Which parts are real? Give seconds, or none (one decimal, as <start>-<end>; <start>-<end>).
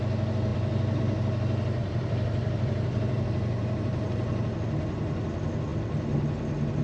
0.0-0.5; 1.0-1.8; 5.2-6.8